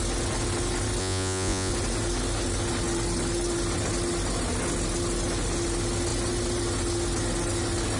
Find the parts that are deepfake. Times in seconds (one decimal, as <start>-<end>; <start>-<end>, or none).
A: 1.0-1.7